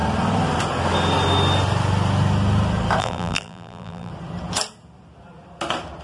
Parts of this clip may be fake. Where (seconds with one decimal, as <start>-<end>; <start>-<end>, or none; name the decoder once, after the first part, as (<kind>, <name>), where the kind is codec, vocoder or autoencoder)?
3.0-4.1 (vocoder, BigVGAN v2)